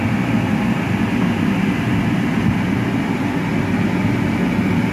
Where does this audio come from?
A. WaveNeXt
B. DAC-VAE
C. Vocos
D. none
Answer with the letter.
D